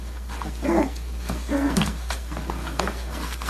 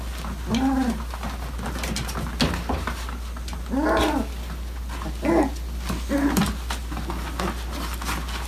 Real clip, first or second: second